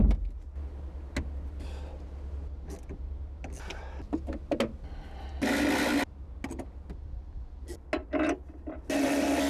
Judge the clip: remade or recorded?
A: recorded